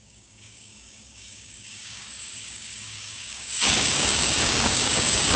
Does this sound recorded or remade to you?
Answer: remade